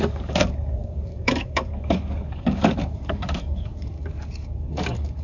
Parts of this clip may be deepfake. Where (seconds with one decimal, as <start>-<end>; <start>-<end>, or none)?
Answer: 0.0-5.2